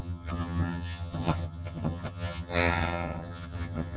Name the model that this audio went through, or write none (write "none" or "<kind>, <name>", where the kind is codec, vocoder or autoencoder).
vocoder, HiFi-GAN